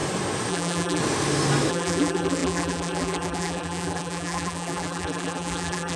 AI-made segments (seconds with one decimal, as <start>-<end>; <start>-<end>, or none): 0.5-1.0; 1.7-6.0